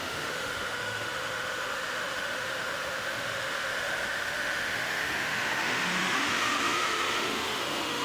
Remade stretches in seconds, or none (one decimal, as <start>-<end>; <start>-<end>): 0.0-8.0